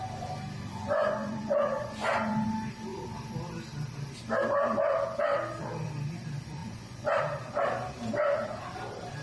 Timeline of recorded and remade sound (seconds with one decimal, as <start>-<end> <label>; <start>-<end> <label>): 0.0-0.7 recorded; 0.7-2.5 remade; 2.5-6.6 recorded; 6.6-7.2 remade; 7.2-9.2 recorded